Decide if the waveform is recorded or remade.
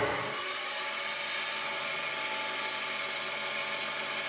recorded